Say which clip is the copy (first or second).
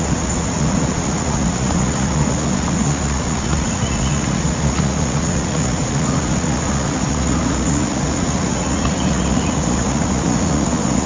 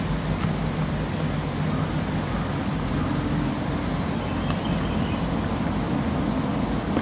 first